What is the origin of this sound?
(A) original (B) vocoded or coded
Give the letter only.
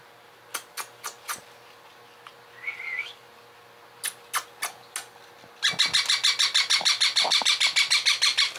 A